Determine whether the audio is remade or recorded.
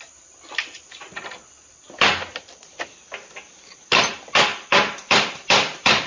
remade